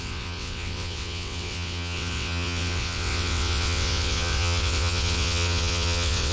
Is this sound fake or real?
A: fake